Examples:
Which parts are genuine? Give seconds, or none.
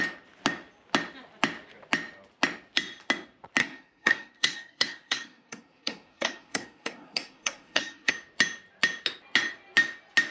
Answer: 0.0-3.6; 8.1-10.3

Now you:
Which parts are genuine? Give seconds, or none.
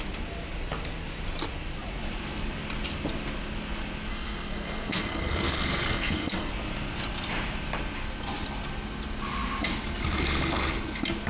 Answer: 0.0-4.1; 6.5-11.3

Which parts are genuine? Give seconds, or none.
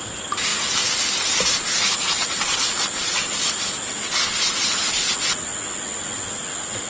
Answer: 0.0-6.9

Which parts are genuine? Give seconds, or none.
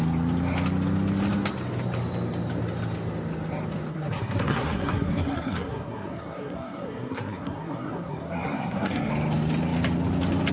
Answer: 0.0-3.9; 9.1-10.5